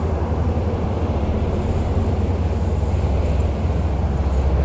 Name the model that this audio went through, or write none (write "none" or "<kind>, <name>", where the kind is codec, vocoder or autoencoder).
none